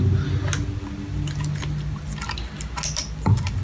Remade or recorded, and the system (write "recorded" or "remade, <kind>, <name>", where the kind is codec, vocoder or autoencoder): recorded